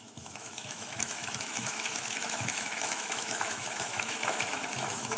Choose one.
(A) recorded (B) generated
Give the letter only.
B